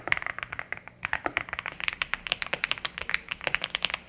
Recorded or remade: recorded